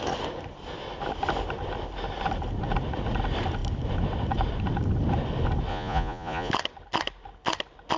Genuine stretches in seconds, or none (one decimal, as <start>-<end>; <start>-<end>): 0.0-5.7; 6.5-8.0